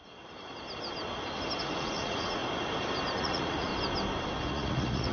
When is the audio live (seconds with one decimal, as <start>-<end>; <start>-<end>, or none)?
0.0-1.6; 2.4-3.2; 3.7-4.5